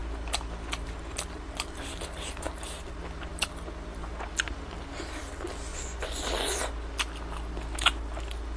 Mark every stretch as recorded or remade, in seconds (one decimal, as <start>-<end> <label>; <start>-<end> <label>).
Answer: 0.0-5.7 recorded; 5.7-6.6 remade; 6.6-8.6 recorded